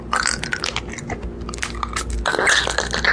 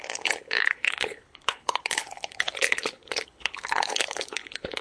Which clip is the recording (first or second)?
first